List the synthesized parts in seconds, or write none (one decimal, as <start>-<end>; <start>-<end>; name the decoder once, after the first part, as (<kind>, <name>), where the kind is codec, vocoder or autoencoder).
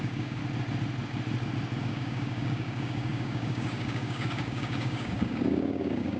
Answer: 0.0-0.4 (codec, DAC); 1.8-6.2